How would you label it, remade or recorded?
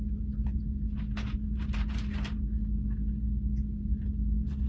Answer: recorded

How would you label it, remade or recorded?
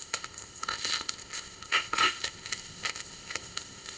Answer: remade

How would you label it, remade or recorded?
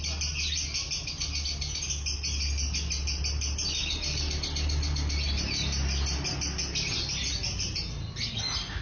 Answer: recorded